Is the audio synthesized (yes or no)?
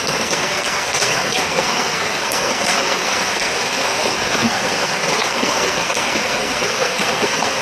yes